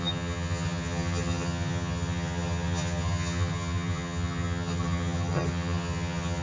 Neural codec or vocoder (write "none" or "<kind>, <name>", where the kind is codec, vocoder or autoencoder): vocoder, HiFi-GAN